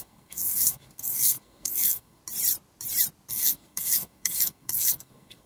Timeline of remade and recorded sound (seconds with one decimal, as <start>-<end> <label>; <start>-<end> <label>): 0.0-2.2 remade; 2.2-3.3 recorded; 3.3-5.5 remade